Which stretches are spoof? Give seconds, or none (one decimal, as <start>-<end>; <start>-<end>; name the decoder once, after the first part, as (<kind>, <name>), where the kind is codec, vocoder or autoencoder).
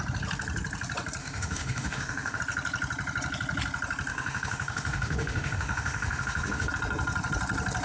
1.2-2.4 (autoencoder, DAC-VAE); 4.1-6.7